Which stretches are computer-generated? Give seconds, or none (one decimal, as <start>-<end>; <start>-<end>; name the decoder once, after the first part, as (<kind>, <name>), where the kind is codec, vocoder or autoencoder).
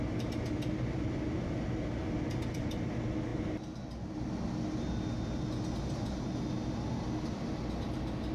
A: none